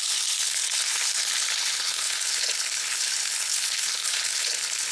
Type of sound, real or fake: fake